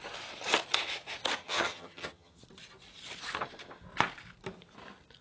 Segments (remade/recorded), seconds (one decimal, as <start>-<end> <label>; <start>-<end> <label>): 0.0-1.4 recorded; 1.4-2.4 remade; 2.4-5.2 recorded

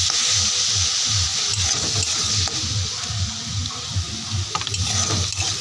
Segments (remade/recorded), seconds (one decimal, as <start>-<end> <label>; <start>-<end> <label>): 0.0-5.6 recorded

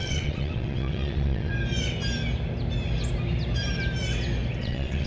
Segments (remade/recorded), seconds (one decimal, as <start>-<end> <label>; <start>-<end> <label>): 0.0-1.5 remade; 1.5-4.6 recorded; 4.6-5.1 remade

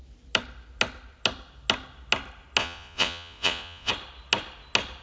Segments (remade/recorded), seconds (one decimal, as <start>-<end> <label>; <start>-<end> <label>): 0.0-2.6 recorded; 2.6-3.9 remade; 3.9-5.0 recorded